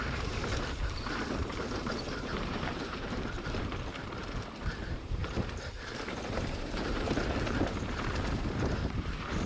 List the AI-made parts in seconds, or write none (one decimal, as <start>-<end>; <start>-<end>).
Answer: 0.0-9.5